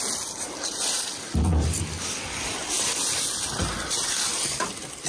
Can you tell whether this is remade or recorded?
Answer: recorded